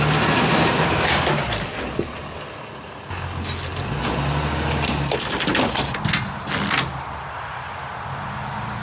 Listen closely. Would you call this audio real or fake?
real